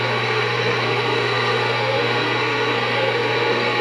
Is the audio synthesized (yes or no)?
yes